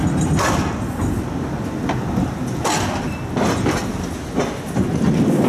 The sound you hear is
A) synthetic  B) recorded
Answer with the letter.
B